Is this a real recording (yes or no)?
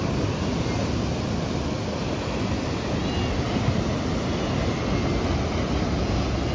yes